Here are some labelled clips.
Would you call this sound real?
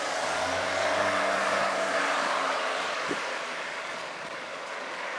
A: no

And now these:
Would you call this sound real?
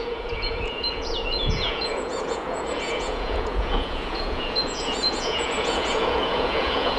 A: no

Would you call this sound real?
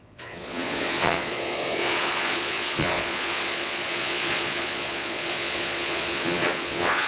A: no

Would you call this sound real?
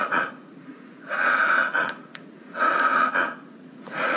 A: no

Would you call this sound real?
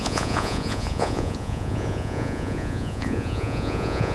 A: no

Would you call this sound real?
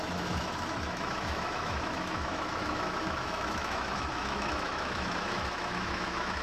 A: no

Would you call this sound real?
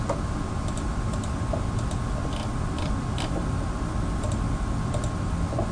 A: yes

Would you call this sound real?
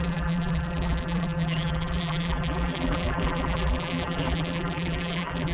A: no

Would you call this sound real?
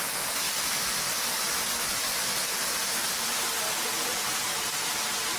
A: yes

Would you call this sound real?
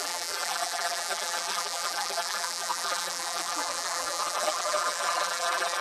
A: no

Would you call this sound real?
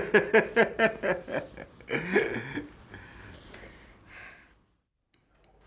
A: yes